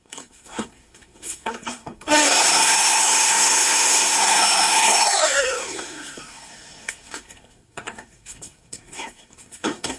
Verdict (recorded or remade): remade